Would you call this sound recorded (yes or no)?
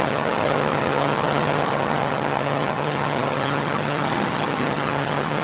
no